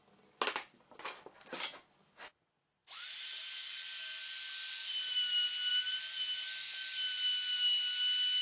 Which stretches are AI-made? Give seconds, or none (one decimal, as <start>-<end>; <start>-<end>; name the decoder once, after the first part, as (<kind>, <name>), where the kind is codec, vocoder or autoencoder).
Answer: none